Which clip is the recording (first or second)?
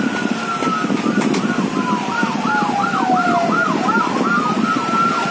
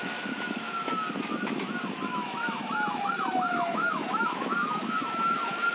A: first